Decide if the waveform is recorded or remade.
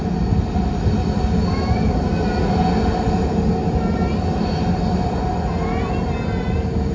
recorded